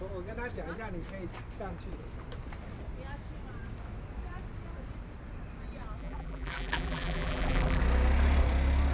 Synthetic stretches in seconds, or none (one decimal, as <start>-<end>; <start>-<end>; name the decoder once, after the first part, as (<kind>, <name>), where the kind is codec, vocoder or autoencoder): 6.0-7.8 (vocoder, BigVGAN v2)